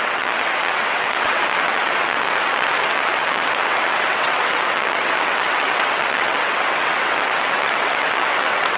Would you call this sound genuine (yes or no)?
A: no